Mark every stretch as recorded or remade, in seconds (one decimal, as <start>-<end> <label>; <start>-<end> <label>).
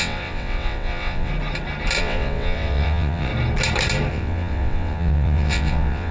0.0-1.3 remade; 1.3-2.0 recorded; 2.0-3.3 remade; 3.3-4.1 recorded; 4.1-6.1 remade